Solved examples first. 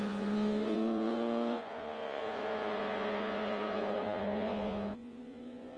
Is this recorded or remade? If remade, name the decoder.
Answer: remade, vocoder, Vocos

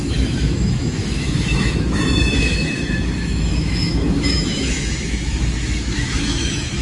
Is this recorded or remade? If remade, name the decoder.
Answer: remade, autoencoder, DAC-VAE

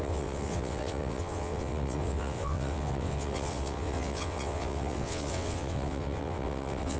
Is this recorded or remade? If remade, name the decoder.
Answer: remade, vocoder, WaveNeXt